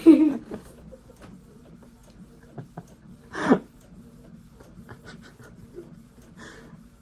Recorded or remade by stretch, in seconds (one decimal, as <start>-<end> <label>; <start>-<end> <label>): 0.0-1.4 recorded; 1.4-5.6 remade; 5.6-7.0 recorded